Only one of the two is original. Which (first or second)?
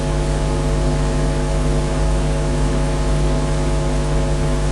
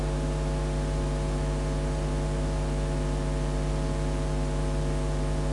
second